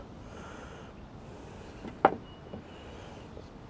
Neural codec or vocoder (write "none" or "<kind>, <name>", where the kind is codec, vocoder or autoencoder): none